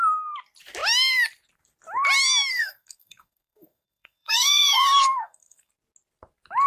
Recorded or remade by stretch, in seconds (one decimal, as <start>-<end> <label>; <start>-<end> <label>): 0.0-2.5 recorded; 2.5-5.7 remade; 5.7-6.7 recorded